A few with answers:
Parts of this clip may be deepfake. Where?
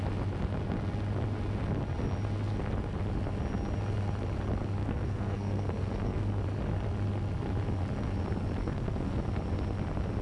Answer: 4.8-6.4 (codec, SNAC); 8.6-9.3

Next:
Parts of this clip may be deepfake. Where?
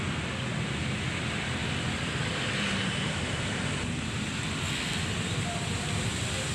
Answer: none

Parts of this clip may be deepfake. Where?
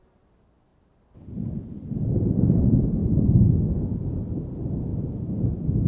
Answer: 0.0-5.9 (vocoder, BigVGAN v2)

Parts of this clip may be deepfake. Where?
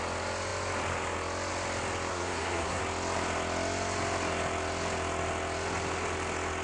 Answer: 2.1-2.8 (codec, SNAC)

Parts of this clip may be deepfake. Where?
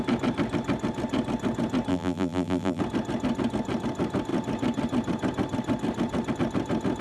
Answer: 1.9-2.8 (vocoder, BigVGAN v2)